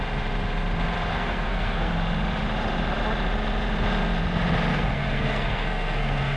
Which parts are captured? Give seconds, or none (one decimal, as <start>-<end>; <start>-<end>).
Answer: 0.0-1.1; 1.9-4.7

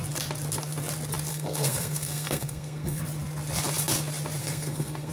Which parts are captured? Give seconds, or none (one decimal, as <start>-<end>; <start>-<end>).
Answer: 0.0-1.3; 3.0-4.4

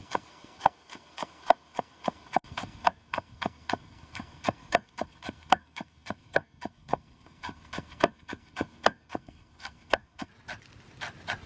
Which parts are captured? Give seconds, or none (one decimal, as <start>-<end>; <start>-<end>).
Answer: 10.3-11.5

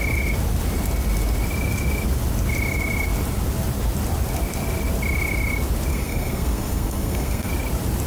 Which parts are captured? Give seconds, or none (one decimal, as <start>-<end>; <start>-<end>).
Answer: 0.0-5.9; 7.5-8.1

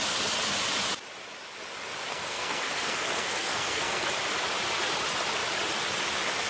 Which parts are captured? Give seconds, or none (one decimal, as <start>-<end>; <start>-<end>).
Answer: 0.0-2.1; 4.1-6.5

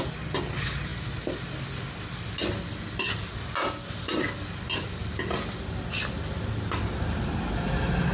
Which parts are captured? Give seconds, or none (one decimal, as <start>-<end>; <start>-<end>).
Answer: 0.0-8.1

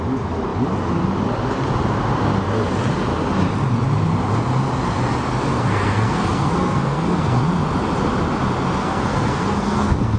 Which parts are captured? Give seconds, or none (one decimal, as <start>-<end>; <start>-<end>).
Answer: 0.0-5.5; 7.4-8.8

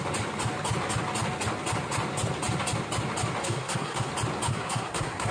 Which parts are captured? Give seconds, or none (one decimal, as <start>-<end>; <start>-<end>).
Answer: 0.0-3.4; 4.1-4.5